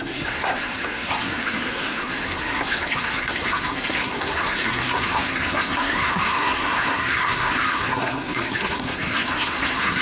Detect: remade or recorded remade